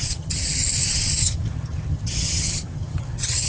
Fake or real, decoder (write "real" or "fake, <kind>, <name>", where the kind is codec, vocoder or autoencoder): fake, vocoder, HiFi-GAN